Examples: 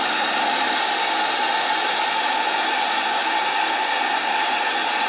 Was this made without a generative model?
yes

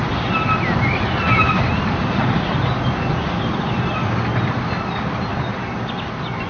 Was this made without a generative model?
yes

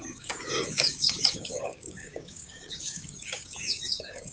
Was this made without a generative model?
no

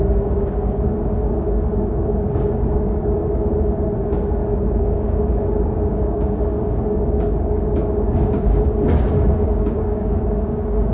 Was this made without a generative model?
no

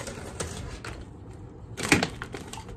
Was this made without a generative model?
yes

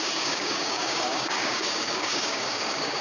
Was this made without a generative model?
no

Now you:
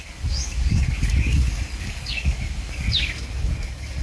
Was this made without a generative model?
no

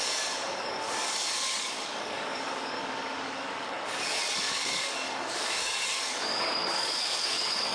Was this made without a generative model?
no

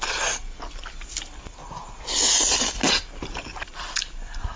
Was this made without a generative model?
yes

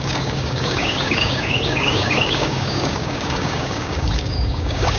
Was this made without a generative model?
no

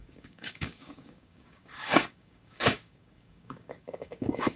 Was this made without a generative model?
no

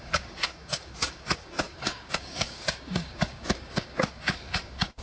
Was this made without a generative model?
no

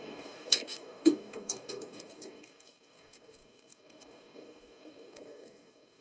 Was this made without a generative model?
no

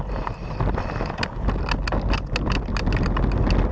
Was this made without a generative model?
yes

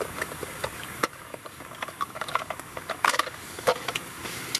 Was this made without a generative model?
no